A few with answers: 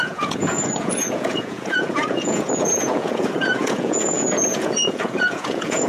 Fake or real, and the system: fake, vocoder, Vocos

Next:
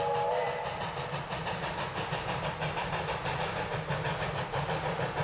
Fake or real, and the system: real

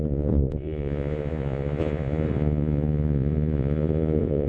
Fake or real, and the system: fake, vocoder, Vocos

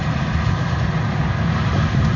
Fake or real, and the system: real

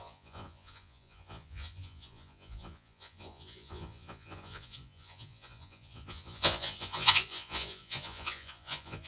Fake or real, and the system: fake, vocoder, Vocos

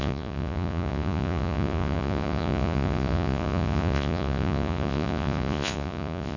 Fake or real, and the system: fake, vocoder, Vocos